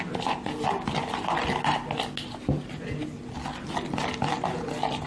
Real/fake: real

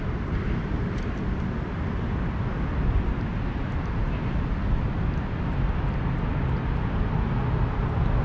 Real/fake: real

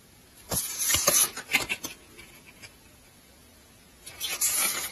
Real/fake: fake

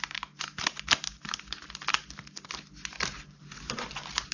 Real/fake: real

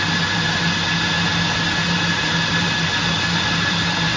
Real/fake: real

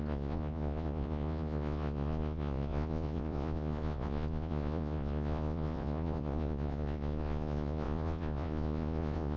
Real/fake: fake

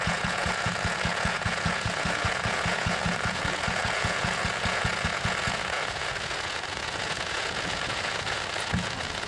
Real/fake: fake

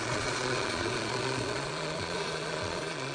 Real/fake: fake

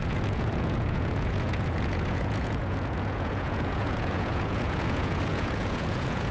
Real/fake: fake